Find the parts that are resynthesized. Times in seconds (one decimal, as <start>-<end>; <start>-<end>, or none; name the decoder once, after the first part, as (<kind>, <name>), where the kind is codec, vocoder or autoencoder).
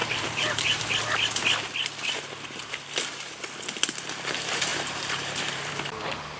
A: 0.0-0.8 (vocoder, BigVGAN v2); 4.7-5.7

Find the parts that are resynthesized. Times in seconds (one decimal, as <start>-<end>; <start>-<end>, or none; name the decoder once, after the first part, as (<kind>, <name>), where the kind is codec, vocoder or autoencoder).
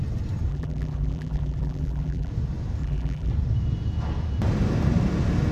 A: 0.5-2.3 (vocoder, BigVGAN v2); 2.8-3.3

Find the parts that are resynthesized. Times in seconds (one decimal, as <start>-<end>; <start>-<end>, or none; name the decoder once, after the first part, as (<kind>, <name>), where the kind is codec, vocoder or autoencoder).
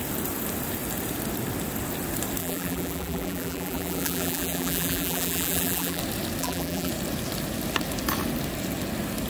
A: 2.4-6.0 (vocoder, BigVGAN v2); 6.4-6.9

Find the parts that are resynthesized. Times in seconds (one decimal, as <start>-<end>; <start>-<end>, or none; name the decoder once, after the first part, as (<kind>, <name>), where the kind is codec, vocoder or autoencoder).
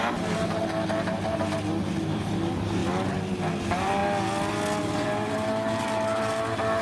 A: 0.0-0.6 (vocoder, BigVGAN v2); 2.0-2.8; 3.6-4.0; 4.8-6.8